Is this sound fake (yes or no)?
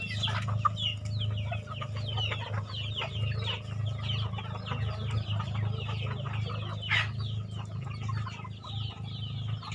no